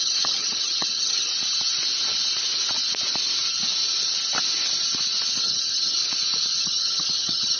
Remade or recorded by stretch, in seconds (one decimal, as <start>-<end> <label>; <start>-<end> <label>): 0.0-1.3 remade; 1.3-5.4 recorded; 5.4-6.0 remade; 6.0-6.6 recorded; 6.6-7.6 remade